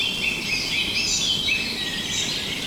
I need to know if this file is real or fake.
real